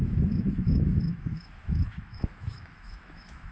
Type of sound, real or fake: fake